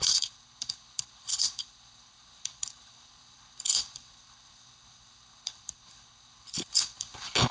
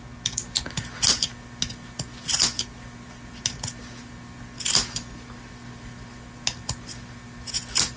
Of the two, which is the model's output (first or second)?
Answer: first